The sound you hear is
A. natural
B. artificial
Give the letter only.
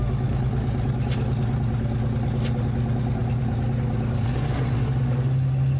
A